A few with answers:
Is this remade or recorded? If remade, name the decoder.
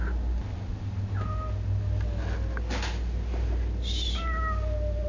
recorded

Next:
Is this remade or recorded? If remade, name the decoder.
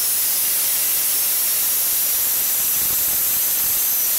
recorded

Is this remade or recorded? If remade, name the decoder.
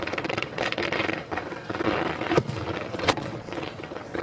remade, vocoder, WaveNeXt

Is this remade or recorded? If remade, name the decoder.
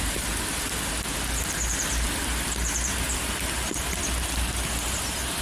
recorded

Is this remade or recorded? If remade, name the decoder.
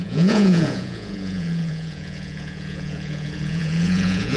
remade, vocoder, Vocos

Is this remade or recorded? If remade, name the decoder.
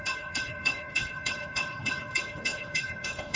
remade, codec, HILCodec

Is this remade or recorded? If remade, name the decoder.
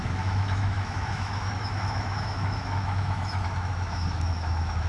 remade, autoencoder, DAC-VAE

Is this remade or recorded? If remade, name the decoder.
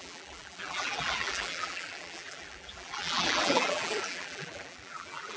remade, vocoder, BigVGAN v2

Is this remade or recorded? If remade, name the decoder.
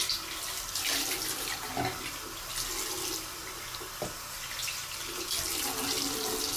recorded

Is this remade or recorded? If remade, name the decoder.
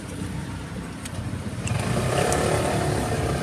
remade, vocoder, BigVGAN v2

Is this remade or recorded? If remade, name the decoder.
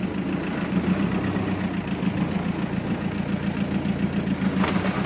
recorded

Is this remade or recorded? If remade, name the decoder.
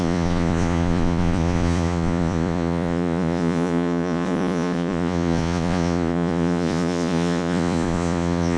remade, vocoder, Vocos